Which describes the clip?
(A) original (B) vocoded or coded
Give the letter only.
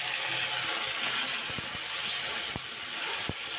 A